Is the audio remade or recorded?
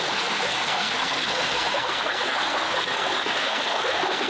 remade